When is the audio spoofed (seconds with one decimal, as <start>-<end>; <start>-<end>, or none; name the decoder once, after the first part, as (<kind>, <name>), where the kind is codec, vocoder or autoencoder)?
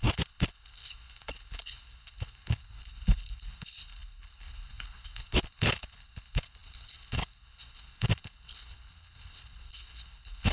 0.0-10.5 (codec, HILCodec)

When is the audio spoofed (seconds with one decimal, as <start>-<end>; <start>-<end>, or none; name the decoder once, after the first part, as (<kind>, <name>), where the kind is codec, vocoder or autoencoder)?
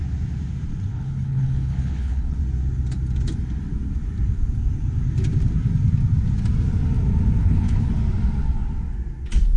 0.9-2.4 (codec, HILCodec); 7.4-7.9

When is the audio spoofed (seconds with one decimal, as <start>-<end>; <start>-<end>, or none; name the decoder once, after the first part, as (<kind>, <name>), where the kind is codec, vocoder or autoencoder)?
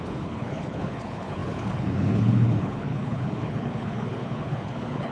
0.0-5.1 (codec, HILCodec)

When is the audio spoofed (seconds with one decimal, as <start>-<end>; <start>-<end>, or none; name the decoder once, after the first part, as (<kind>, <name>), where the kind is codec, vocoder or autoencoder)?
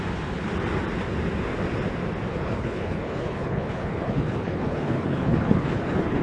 2.3-6.2 (codec, HILCodec)